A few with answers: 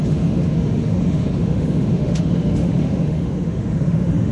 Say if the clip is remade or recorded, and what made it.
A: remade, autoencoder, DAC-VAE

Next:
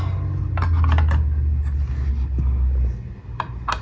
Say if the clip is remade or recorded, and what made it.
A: recorded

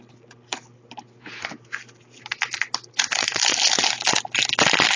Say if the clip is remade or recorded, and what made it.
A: recorded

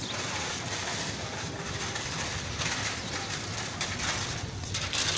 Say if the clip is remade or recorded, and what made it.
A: remade, vocoder, BigVGAN v2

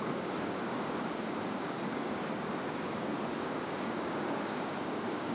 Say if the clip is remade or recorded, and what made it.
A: remade, codec, DAC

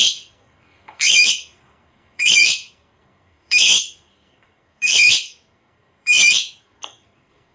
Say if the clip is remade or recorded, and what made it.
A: remade, codec, SNAC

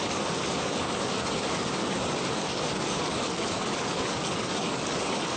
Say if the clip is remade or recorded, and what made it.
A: remade, codec, DAC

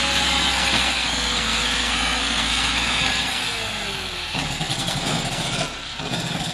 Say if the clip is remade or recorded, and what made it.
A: remade, codec, SNAC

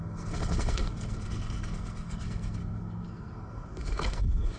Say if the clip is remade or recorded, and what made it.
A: remade, codec, SNAC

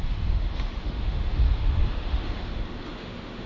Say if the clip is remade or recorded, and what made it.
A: remade, autoencoder, DAC-VAE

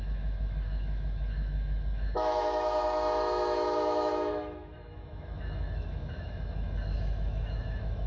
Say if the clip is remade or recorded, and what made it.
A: remade, autoencoder, DAC-VAE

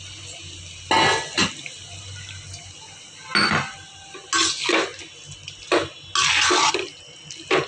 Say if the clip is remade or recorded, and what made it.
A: recorded